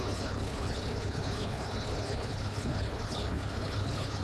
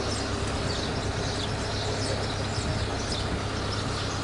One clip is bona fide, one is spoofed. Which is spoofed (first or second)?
first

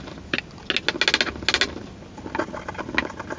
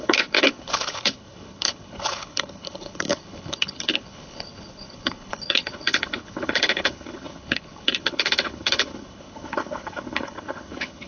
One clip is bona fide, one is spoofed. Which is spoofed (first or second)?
second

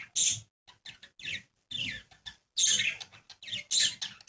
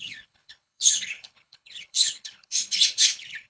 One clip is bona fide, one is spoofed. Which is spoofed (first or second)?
second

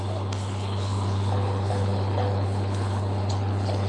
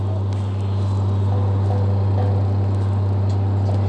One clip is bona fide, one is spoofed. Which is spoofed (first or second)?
first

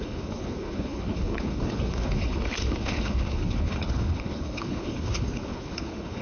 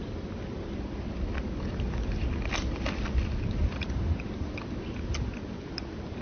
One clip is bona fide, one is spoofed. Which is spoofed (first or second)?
first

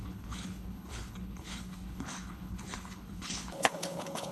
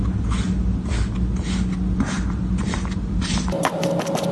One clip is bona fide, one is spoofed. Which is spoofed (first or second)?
first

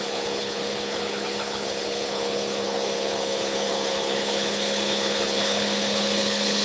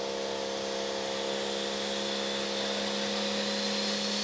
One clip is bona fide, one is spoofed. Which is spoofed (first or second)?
first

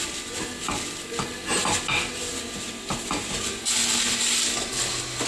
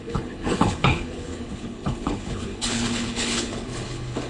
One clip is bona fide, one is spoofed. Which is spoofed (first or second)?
second